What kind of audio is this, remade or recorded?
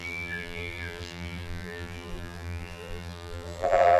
remade